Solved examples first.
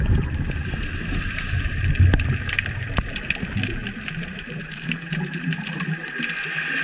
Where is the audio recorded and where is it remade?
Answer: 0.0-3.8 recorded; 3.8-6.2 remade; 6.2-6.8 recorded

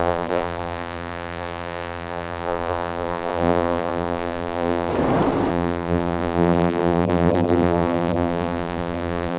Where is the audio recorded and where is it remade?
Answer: 0.0-4.9 remade; 4.9-5.5 recorded; 5.5-9.4 remade